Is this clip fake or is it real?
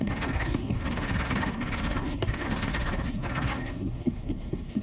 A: fake